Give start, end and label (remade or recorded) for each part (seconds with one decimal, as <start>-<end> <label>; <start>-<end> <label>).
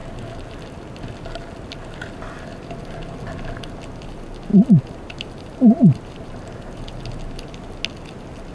0.0-4.5 recorded; 4.5-6.8 remade; 6.8-8.5 recorded